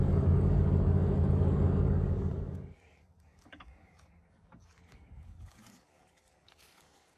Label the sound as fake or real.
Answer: fake